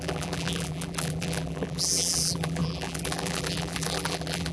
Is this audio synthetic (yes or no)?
yes